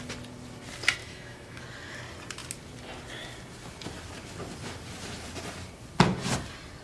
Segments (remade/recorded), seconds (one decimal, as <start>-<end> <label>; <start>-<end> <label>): 0.0-1.0 recorded; 1.0-1.6 remade; 1.6-6.8 recorded